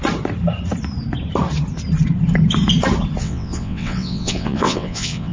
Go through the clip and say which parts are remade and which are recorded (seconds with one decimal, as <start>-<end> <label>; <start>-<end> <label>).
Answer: 0.0-3.2 recorded; 3.2-5.3 remade